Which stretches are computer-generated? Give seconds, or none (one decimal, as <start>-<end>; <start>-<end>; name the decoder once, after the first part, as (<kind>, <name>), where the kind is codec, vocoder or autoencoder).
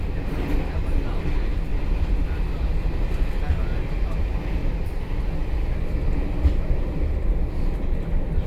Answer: 4.6-5.8 (vocoder, BigVGAN v2)